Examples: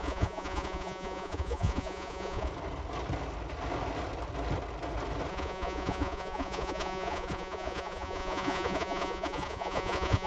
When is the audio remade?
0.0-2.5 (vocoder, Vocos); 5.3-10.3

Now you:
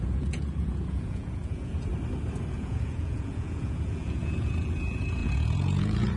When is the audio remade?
0.0-1.9 (vocoder, Vocos); 2.5-6.2